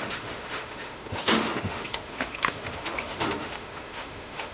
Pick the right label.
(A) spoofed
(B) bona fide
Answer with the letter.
A